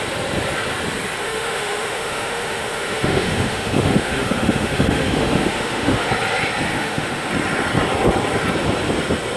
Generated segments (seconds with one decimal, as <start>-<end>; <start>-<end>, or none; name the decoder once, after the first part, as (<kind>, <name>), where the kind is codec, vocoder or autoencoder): 1.2-6.1 (autoencoder, DAC-VAE); 6.7-7.3